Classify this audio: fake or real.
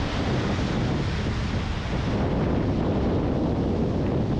real